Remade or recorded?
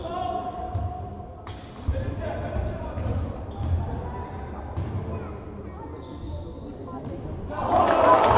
recorded